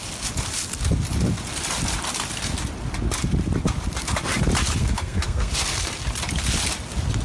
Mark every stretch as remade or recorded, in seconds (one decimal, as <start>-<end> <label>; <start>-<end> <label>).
0.0-4.8 recorded; 4.8-5.5 remade; 5.5-7.2 recorded